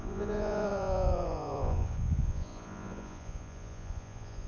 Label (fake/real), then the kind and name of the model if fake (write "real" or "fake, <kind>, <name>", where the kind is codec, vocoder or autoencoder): fake, vocoder, Vocos